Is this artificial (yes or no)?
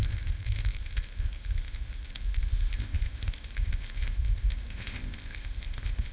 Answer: yes